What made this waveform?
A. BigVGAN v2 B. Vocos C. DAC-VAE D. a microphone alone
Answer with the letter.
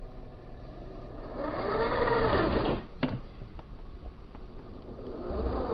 A